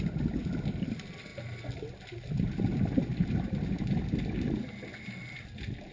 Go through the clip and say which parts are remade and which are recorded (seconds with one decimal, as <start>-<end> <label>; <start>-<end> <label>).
0.0-5.9 recorded